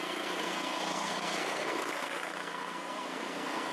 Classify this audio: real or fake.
fake